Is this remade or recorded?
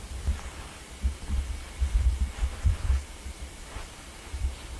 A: remade